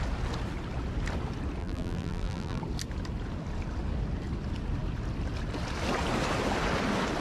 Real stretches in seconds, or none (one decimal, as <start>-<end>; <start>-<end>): 0.0-1.6; 2.6-7.2